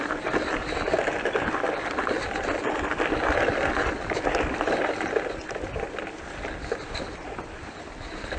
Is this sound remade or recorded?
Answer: remade